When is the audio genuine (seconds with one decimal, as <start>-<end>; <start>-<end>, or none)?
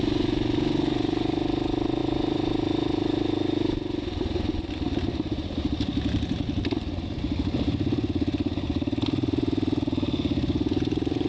0.0-11.3